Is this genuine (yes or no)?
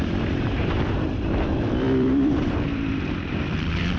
no